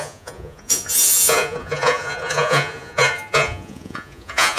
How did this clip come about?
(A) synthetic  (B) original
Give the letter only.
A